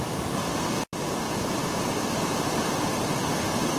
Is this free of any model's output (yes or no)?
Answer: yes